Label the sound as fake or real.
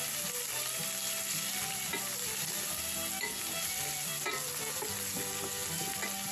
real